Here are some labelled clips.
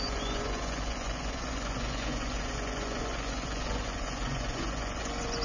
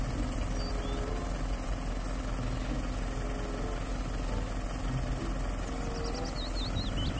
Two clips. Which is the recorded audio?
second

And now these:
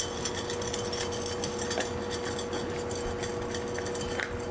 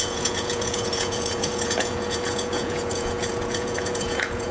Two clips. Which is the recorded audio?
first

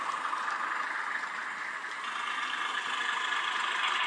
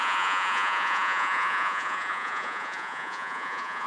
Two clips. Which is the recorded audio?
first